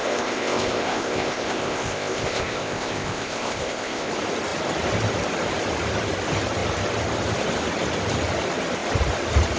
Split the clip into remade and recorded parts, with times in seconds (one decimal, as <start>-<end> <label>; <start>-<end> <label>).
0.0-4.1 remade; 4.1-9.6 recorded